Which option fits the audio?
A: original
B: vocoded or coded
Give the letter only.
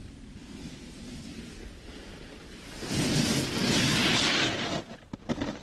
A